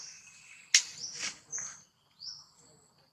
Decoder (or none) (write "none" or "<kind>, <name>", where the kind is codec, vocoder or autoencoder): none